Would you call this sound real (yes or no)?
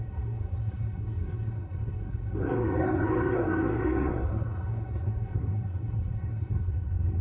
no